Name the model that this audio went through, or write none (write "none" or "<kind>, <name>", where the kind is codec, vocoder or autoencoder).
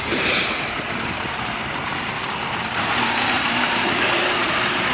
vocoder, BigVGAN v2